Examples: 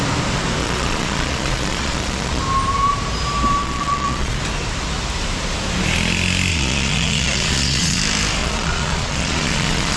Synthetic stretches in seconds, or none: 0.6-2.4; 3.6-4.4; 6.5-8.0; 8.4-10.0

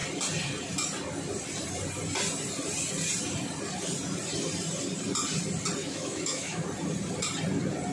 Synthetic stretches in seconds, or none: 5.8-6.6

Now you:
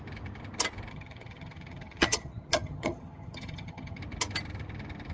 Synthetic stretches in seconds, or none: 0.9-4.0